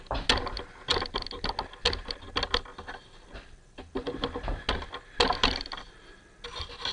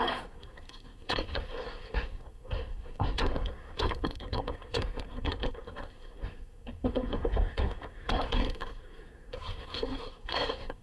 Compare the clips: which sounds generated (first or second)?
second